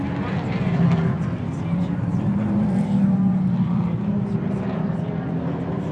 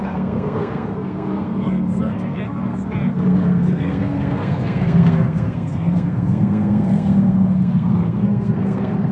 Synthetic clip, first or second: second